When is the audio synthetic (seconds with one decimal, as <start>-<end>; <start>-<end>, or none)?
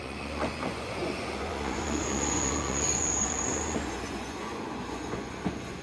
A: 0.0-5.8